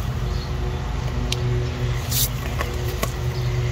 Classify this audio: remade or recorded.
recorded